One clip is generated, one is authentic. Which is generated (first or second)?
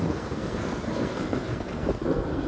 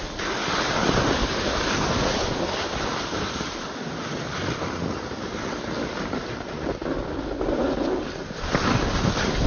first